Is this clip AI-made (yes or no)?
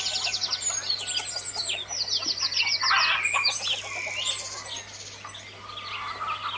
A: no